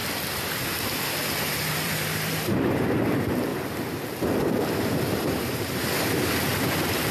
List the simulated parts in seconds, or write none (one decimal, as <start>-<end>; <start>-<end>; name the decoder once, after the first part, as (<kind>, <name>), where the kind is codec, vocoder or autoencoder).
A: 1.4-3.5 (vocoder, BigVGAN v2); 5.2-5.8; 6.5-7.1